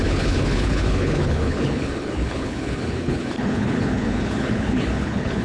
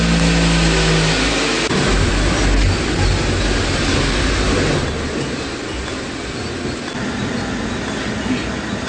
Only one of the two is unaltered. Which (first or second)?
second